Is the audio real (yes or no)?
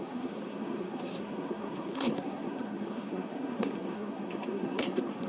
no